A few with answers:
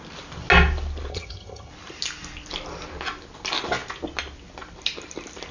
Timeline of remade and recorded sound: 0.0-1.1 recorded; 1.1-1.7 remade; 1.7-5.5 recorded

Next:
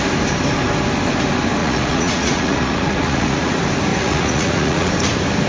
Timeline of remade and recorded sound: 0.0-1.6 recorded; 1.6-3.5 remade; 3.5-3.9 recorded; 3.9-4.9 remade; 4.9-5.5 recorded

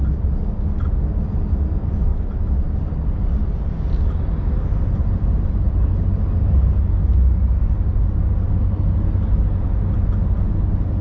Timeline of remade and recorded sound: 0.0-2.1 recorded; 2.1-2.8 remade; 2.8-11.0 recorded

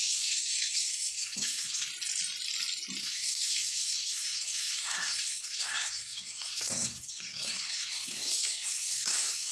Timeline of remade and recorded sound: 0.0-1.9 remade; 1.9-3.0 recorded; 3.0-9.5 remade

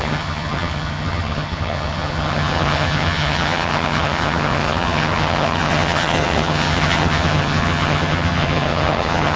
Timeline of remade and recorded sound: 0.0-9.4 remade